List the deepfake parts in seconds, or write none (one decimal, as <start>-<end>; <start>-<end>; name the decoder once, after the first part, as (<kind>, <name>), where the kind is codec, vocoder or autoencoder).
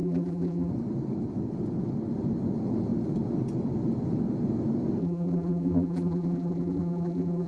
0.0-0.7 (vocoder, BigVGAN v2); 5.0-7.5